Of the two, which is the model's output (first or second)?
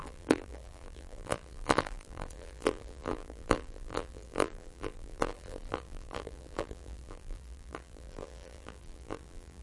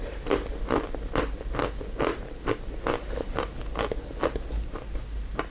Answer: first